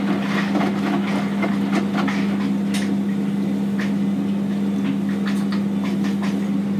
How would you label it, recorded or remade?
recorded